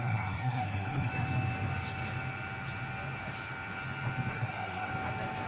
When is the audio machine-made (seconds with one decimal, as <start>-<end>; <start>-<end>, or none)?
0.0-1.1; 4.3-4.9